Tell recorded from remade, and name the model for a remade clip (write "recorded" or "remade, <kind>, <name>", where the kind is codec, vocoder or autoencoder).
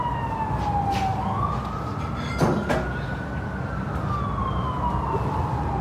recorded